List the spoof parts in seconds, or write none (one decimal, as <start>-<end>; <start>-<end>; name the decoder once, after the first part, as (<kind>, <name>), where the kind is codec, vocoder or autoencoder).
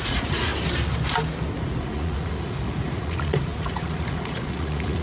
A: 0.0-0.5 (vocoder, Vocos); 1.6-5.0